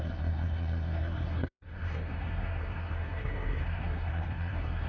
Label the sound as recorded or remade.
remade